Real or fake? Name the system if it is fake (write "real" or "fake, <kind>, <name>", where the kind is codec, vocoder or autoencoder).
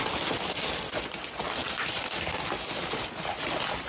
real